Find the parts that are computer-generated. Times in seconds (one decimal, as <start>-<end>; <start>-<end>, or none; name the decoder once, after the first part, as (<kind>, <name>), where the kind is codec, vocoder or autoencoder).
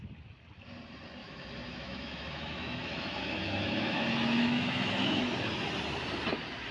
1.2-5.2 (autoencoder, DAC-VAE)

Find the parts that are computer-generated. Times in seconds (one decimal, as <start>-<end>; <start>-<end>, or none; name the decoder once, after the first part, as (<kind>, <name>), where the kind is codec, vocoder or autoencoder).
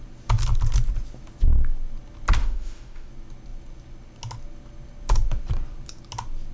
2.4-3.1 (autoencoder, DAC-VAE)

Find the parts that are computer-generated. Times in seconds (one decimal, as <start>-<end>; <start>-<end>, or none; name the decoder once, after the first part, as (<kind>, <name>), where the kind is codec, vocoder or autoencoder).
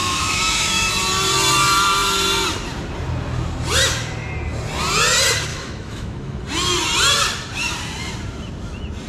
0.0-0.9 (autoencoder, DAC-VAE); 5.5-6.4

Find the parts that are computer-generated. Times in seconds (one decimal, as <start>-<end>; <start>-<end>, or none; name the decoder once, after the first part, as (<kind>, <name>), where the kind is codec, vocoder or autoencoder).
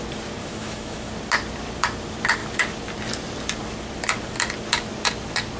0.4-1.1 (autoencoder, DAC-VAE)